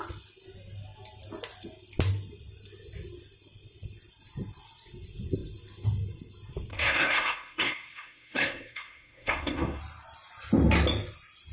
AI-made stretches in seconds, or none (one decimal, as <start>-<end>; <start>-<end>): 6.7-9.8